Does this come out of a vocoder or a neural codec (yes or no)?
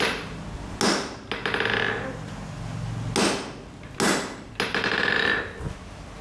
no